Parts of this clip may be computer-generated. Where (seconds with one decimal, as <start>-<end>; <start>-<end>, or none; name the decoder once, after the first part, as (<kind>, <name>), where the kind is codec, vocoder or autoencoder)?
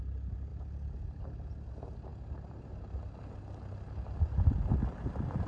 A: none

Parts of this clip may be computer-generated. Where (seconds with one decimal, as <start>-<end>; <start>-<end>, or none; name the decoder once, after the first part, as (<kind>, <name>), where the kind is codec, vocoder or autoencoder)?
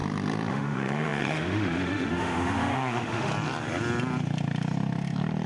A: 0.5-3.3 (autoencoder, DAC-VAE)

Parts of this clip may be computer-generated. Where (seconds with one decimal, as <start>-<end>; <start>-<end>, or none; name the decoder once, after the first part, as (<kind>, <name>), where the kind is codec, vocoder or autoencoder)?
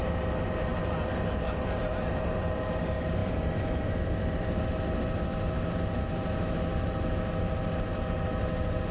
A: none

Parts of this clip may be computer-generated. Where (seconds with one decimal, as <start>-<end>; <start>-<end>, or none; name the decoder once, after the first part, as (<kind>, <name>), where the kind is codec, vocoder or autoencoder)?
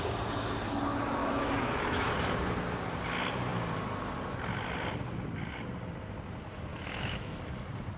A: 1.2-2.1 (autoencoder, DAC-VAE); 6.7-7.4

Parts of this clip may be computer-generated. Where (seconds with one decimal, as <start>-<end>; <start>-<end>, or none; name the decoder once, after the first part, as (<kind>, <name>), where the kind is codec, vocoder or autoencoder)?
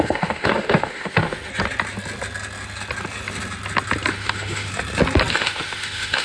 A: 0.0-1.5 (autoencoder, DAC-VAE); 4.1-4.7; 5.3-6.2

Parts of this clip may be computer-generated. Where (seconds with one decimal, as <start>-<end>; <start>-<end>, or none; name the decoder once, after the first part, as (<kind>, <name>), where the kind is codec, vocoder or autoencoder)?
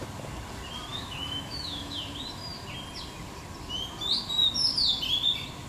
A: 0.9-2.0 (autoencoder, DAC-VAE)